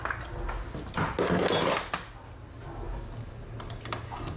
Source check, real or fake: real